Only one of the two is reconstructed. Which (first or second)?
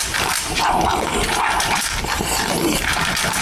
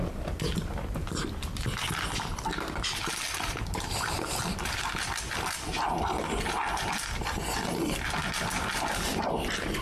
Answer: first